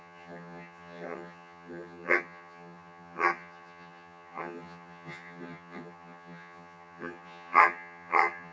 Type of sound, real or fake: fake